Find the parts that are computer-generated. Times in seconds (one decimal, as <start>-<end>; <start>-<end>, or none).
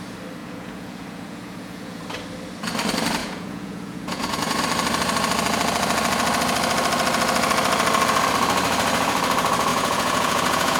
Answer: 0.4-2.0; 3.2-4.6; 9.7-10.8